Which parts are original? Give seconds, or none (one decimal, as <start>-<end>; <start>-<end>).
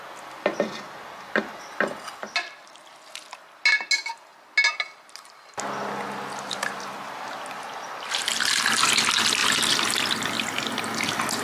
0.0-9.4; 10.2-11.4